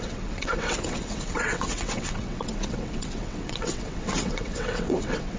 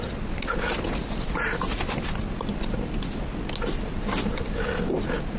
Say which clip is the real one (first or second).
second